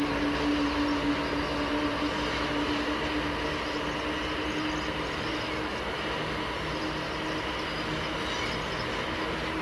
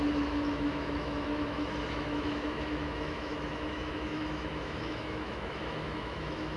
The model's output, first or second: second